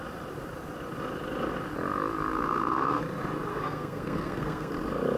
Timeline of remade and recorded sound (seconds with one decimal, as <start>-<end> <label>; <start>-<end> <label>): 0.0-2.3 recorded; 2.3-3.0 remade; 3.0-3.5 recorded; 3.5-4.7 remade; 4.7-5.2 recorded